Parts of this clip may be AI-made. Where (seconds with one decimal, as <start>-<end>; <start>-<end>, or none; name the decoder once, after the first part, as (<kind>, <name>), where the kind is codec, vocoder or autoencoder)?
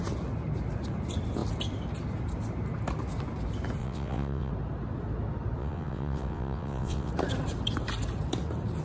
3.8-4.5 (vocoder, WaveNeXt); 5.6-7.1